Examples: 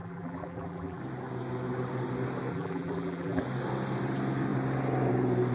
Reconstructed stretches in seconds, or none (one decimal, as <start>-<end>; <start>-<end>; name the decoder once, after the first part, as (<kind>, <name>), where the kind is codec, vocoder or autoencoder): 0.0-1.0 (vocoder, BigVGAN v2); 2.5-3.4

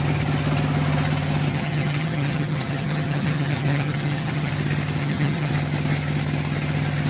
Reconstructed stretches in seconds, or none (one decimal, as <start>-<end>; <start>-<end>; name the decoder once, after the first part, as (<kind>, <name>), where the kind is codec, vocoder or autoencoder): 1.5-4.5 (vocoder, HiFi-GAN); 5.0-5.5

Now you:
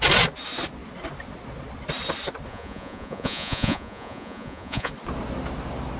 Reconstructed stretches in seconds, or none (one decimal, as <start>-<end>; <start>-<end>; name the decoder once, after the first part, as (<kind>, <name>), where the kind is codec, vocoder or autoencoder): 2.5-4.9 (vocoder, Vocos)

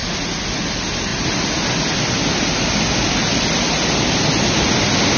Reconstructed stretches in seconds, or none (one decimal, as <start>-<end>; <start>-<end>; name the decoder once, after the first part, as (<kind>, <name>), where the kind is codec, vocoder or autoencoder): none

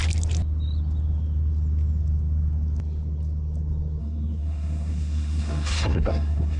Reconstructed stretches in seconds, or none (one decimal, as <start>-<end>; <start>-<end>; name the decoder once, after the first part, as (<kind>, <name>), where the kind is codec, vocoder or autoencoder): 4.0-6.6 (codec, SNAC)

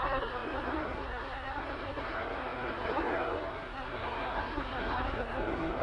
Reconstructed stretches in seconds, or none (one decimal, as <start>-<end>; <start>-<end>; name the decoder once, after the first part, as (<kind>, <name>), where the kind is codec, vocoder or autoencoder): 0.0-5.8 (codec, SNAC)

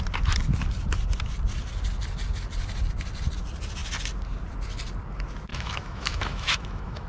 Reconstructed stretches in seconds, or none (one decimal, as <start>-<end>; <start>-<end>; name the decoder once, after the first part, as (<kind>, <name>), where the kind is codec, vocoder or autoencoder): 5.5-7.1 (autoencoder, DAC-VAE)

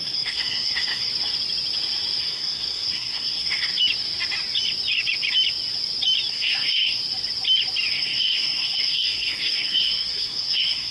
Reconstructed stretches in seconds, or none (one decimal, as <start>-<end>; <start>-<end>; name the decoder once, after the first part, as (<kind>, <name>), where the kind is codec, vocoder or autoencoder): 0.0-1.1 (codec, SNAC); 2.2-3.7; 6.3-7.0; 7.9-10.9